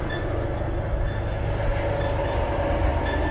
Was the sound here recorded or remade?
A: recorded